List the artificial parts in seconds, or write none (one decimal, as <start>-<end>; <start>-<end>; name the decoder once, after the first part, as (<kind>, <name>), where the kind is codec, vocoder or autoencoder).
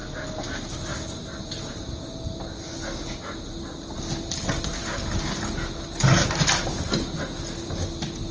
none